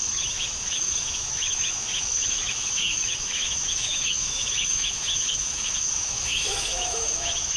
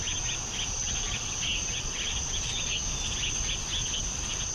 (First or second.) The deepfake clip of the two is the first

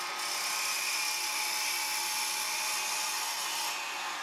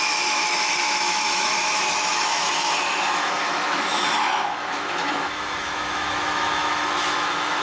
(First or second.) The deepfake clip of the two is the second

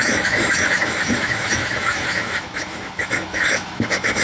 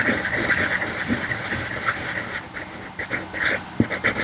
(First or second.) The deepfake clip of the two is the first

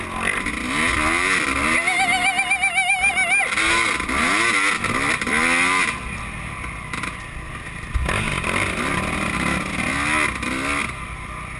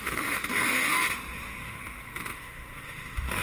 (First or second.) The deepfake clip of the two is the second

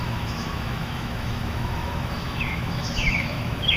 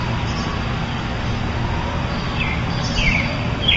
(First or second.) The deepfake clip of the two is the first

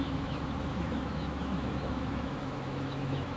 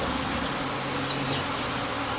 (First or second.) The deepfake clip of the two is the first